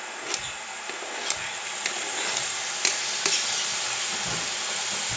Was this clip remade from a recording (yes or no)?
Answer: no